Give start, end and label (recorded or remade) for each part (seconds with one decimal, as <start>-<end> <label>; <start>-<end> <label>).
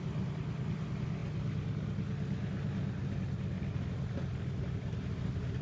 0.0-5.6 recorded